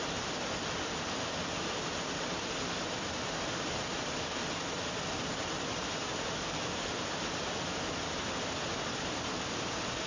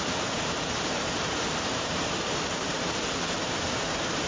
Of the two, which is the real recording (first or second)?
first